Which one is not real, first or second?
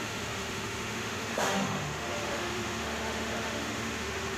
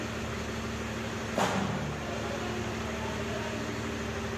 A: first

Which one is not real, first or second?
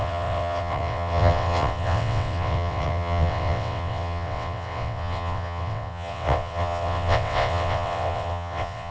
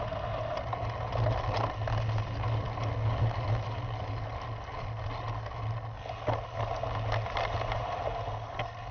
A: first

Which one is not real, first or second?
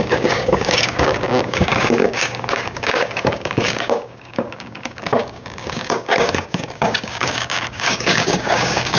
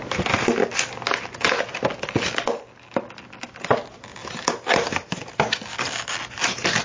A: first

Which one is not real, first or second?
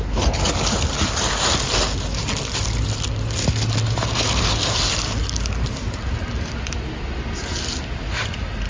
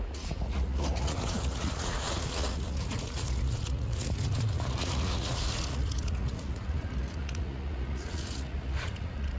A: second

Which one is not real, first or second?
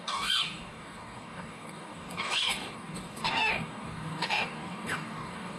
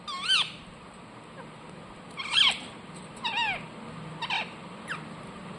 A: first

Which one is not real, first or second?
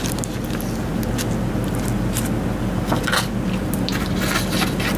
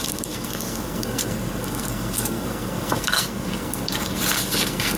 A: second